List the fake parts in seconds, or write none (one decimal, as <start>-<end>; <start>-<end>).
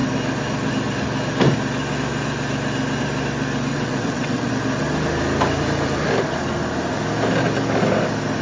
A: 3.7-4.5